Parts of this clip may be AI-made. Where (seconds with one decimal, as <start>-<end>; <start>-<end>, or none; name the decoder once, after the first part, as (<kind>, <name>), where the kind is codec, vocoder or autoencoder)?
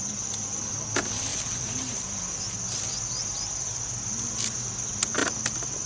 1.3-2.4 (vocoder, BigVGAN v2)